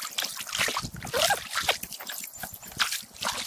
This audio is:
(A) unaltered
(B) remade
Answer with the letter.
A